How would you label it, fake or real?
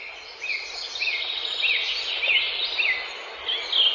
real